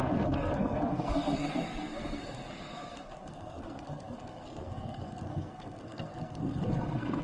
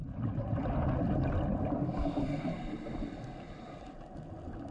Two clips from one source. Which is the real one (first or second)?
second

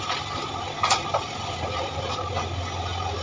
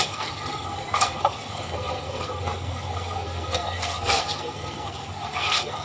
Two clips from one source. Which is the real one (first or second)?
first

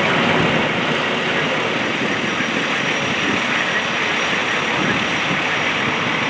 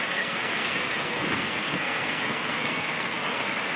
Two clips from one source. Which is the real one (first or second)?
first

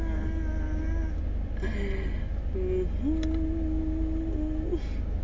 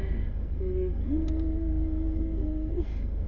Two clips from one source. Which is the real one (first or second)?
first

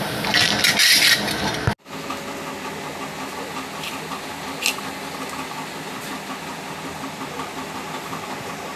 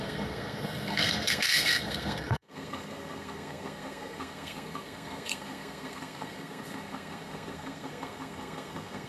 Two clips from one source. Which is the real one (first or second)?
first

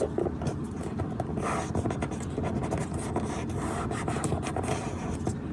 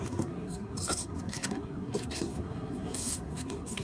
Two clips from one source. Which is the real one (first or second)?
first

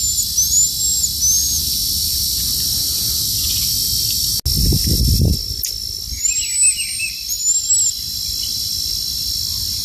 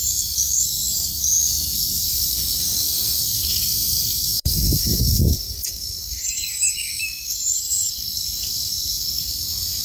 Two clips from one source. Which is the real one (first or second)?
first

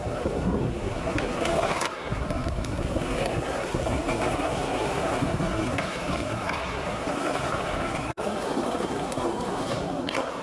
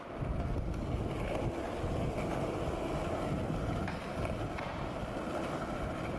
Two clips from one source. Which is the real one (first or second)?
second